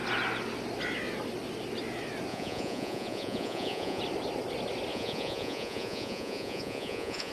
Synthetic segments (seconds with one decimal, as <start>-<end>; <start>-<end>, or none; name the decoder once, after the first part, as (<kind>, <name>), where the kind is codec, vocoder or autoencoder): 2.3-4.0 (vocoder, Vocos); 4.9-7.3